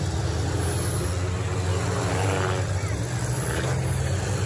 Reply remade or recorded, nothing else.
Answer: recorded